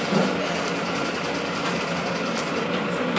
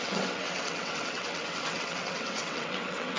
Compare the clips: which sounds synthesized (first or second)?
second